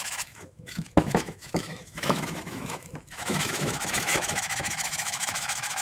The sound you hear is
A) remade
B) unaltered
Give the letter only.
A